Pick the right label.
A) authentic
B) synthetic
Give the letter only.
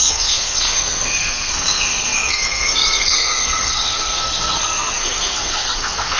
B